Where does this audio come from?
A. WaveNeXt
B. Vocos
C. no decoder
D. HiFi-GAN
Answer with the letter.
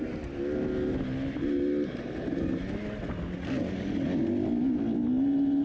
C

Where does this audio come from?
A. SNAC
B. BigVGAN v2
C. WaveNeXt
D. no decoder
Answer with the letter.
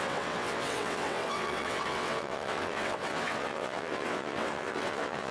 C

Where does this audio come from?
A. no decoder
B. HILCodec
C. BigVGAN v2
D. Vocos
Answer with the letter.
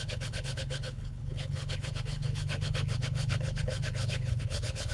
B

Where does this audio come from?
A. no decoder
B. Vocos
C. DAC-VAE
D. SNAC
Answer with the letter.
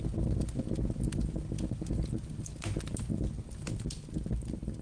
A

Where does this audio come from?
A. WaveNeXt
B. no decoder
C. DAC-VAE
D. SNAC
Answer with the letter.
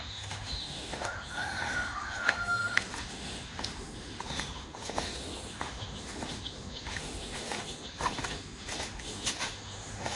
C